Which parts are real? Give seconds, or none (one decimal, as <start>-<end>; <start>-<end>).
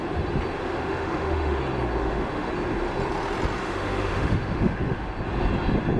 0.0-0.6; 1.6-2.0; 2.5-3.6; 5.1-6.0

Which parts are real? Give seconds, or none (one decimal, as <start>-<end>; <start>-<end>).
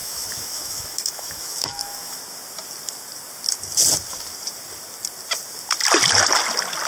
2.2-6.9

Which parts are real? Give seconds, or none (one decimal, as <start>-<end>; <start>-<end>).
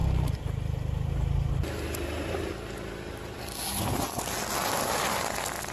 0.0-5.7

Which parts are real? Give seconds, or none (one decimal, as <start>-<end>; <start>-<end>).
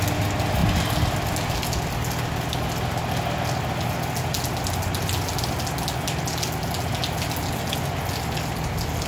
0.0-9.1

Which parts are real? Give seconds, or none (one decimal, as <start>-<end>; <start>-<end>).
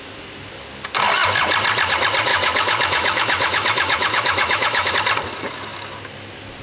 0.0-2.3; 4.9-6.6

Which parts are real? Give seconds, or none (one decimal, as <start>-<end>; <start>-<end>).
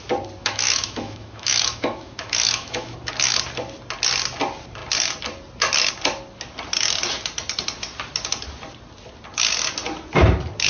0.0-0.4; 3.1-10.7